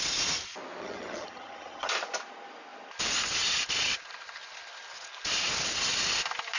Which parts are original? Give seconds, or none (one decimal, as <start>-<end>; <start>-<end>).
0.0-0.8; 1.9-6.6